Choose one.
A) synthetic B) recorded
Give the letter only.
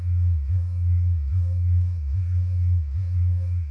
A